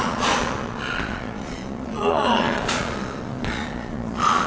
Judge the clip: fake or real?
fake